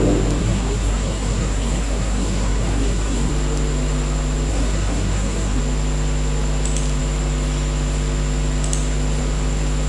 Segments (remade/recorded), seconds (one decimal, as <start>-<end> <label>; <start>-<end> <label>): 0.0-0.4 recorded; 0.4-3.3 remade; 3.3-4.5 recorded; 4.5-5.6 remade; 5.6-9.9 recorded